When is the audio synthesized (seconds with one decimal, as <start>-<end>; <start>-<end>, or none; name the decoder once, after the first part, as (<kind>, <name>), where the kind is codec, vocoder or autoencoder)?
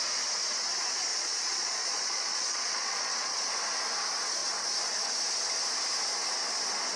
1.1-3.5 (vocoder, Vocos)